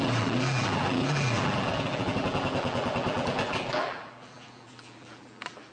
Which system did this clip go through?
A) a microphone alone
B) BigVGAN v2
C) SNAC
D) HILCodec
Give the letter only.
B